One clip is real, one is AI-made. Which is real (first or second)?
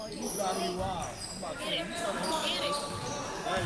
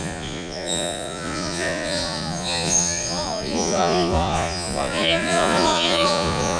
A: first